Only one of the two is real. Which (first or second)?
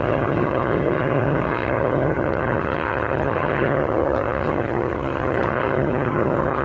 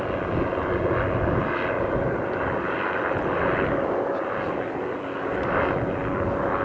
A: second